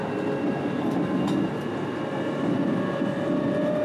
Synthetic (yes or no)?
no